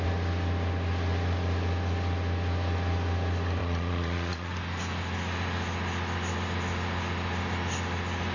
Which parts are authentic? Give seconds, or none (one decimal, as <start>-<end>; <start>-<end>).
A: 0.0-3.6; 4.5-8.3